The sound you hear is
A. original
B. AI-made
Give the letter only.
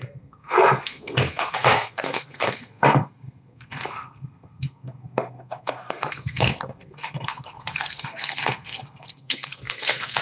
B